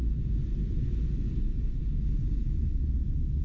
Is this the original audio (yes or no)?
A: yes